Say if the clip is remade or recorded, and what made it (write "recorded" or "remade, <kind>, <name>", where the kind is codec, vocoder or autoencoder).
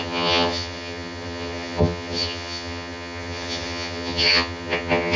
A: remade, vocoder, HiFi-GAN